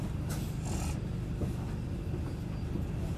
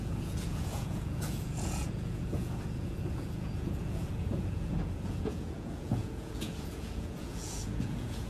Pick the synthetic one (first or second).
second